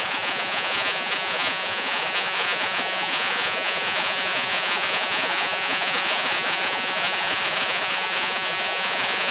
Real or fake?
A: fake